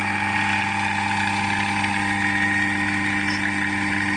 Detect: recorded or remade recorded